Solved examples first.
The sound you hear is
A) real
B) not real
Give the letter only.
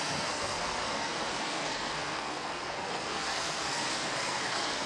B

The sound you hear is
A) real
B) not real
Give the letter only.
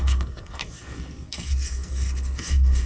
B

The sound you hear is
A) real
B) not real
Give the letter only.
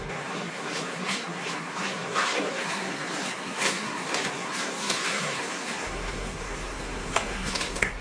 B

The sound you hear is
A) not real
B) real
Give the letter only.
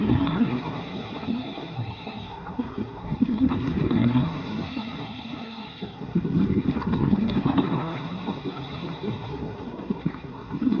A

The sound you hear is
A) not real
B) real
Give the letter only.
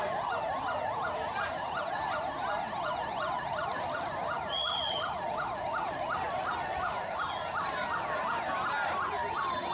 B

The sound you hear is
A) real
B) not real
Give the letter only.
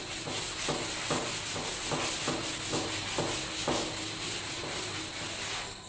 A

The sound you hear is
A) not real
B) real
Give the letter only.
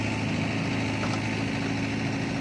B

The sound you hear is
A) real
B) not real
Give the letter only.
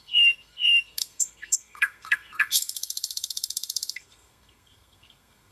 B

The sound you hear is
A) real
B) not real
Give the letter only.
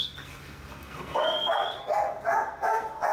B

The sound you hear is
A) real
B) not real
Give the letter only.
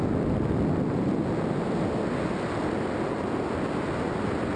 A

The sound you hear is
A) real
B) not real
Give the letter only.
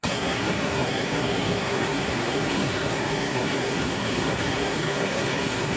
B